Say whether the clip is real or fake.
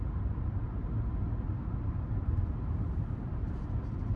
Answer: real